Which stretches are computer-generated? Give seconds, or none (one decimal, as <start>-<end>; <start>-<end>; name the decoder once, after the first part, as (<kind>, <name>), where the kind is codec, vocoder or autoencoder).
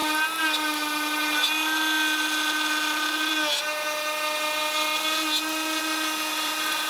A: 6.3-6.9 (vocoder, BigVGAN v2)